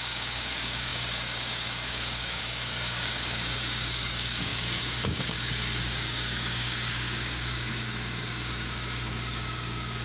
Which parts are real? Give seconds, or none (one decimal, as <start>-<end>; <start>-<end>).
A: none